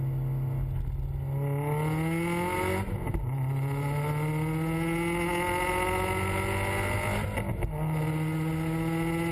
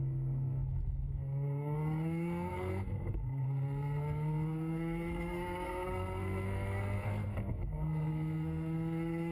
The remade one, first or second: second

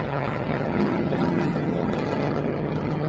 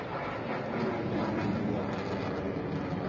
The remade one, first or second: first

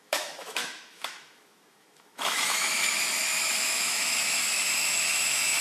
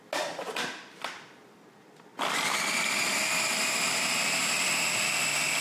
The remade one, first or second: first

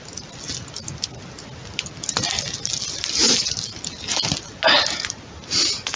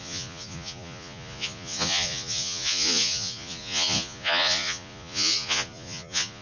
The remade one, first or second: second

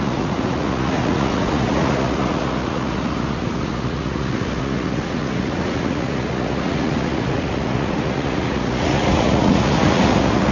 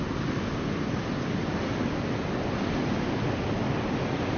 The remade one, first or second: first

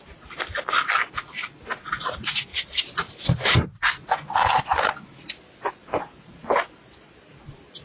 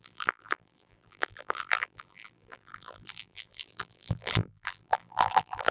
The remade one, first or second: second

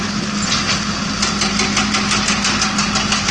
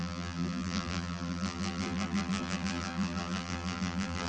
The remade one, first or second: second